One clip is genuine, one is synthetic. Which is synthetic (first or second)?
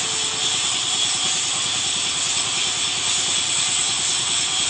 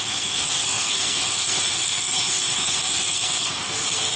second